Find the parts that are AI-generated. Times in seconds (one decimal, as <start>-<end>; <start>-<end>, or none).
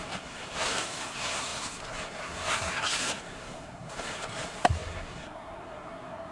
0.0-6.3